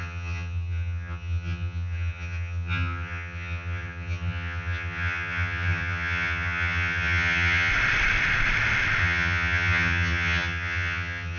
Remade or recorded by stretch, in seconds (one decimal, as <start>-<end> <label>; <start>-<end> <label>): 0.0-7.7 remade; 7.7-9.0 recorded; 9.0-11.4 remade